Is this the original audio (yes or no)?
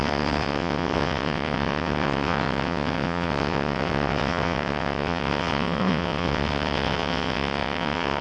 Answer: no